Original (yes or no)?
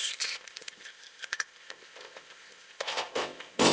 no